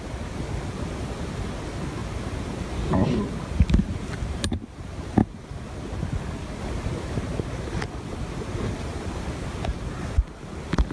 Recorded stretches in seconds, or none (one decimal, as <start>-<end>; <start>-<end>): 0.0-10.9

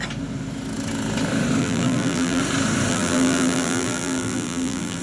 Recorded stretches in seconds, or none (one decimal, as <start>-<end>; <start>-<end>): 0.0-1.6; 2.4-2.9

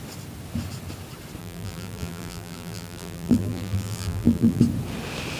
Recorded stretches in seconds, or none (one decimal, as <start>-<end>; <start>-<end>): 0.0-1.4; 4.6-5.4